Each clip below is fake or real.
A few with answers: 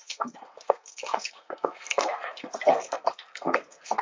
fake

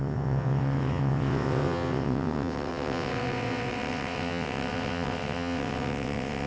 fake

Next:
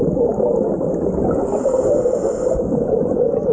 real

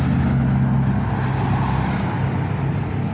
real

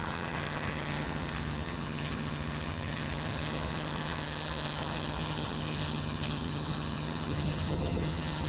fake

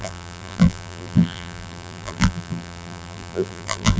fake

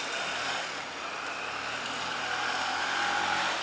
real